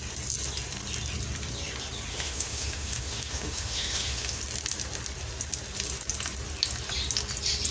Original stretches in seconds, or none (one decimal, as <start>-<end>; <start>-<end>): 0.0-2.1; 4.4-7.7

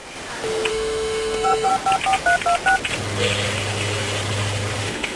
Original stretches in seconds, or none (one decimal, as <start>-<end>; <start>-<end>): 0.0-0.7; 1.7-4.8

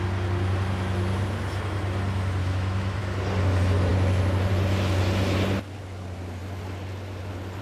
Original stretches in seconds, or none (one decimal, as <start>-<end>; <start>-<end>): 0.0-2.4; 3.0-7.6

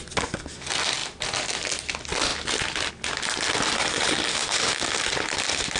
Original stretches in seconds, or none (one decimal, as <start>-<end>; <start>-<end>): 0.0-4.3; 5.0-5.8

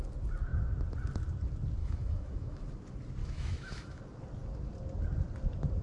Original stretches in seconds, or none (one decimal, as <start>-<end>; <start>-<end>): 0.0-1.8; 2.6-3.2; 4.0-5.8

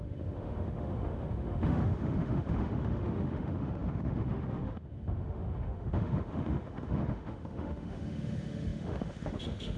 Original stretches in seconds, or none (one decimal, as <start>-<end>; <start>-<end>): none

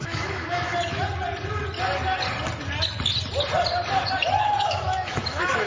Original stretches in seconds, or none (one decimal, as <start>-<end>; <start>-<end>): 1.0-4.4